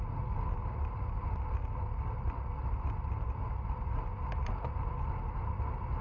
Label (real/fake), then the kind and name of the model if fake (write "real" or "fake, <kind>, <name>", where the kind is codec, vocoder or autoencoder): real